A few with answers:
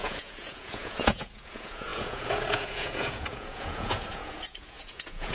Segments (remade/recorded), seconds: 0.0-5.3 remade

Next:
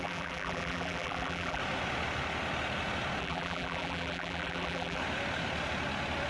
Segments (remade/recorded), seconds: 0.0-1.6 remade; 1.6-3.2 recorded; 3.2-5.0 remade; 5.0-6.3 recorded

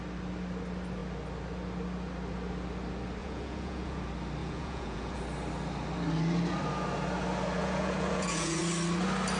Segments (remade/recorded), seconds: 0.0-3.2 recorded; 3.2-4.0 remade; 4.0-4.4 recorded; 4.4-5.2 remade; 5.2-7.6 recorded; 7.6-8.6 remade; 8.6-9.4 recorded

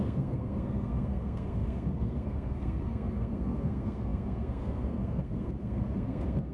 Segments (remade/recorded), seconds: 0.0-6.5 remade

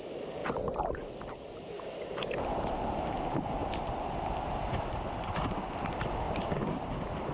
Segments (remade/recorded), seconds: 0.0-7.3 recorded

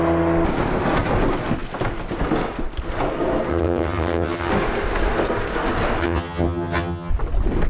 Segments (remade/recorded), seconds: 0.0-3.5 recorded; 3.5-4.5 remade; 4.5-6.0 recorded; 6.0-7.1 remade; 7.1-7.7 recorded